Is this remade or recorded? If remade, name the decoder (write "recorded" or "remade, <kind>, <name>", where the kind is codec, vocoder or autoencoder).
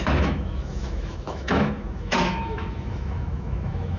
remade, autoencoder, DAC-VAE